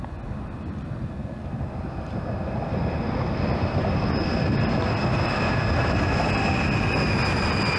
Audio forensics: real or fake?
real